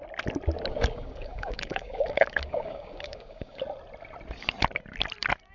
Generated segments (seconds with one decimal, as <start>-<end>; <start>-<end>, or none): 0.7-3.6